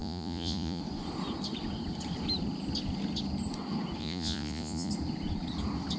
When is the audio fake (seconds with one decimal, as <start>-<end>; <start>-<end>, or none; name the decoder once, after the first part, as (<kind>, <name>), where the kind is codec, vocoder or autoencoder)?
0.0-0.8 (vocoder, Vocos); 4.0-4.9